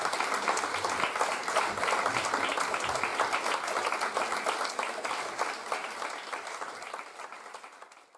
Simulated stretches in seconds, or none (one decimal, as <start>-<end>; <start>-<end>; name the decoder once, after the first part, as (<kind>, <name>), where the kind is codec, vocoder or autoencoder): none